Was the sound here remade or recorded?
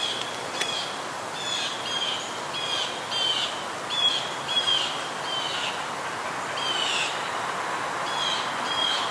recorded